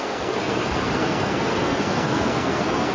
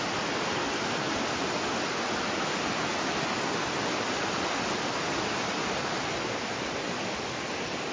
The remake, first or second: first